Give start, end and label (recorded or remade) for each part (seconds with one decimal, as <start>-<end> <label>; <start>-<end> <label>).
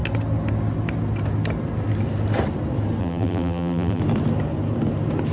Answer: 0.0-3.0 recorded; 3.0-4.0 remade; 4.0-5.3 recorded